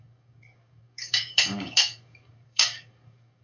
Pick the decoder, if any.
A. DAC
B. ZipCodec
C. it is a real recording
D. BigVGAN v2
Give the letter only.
A